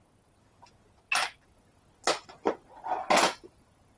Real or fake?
real